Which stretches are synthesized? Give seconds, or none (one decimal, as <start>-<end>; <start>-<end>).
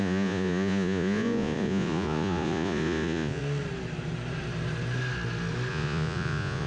0.0-3.4; 5.7-6.7